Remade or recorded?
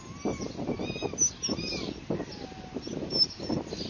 recorded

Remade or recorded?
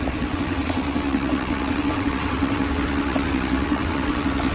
remade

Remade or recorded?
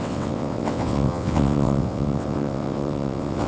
remade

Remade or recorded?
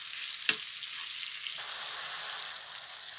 recorded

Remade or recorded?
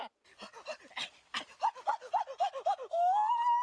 recorded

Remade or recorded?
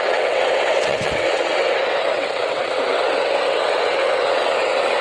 remade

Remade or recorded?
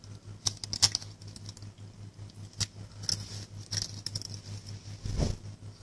recorded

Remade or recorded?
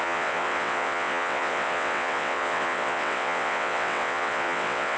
remade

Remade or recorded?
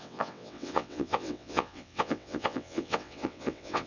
remade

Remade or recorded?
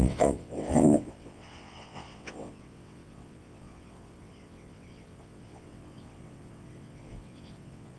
remade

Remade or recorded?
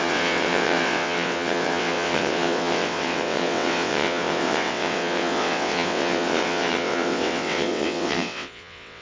remade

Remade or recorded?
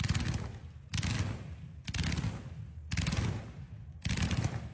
recorded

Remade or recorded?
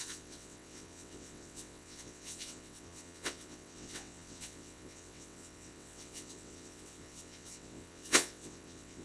remade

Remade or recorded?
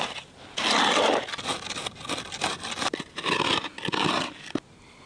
recorded